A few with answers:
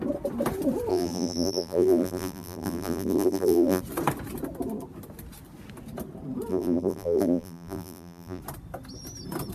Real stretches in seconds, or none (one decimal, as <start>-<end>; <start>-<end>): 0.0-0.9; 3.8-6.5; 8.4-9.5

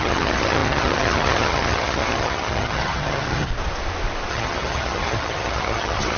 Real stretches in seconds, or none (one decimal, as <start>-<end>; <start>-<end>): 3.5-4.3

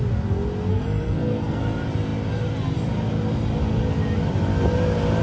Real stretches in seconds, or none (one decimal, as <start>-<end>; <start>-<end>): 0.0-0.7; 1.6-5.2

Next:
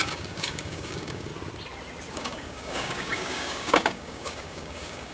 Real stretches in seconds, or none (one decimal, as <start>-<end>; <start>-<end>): 1.3-2.1